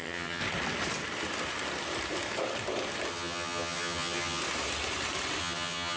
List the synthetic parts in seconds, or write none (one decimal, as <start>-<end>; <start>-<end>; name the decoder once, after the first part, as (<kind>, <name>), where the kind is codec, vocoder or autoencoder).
0.0-0.4 (vocoder, HiFi-GAN); 3.1-4.4; 5.4-6.0